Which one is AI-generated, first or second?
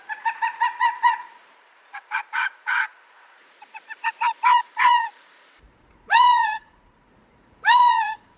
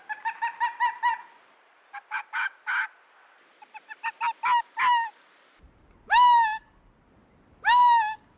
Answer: first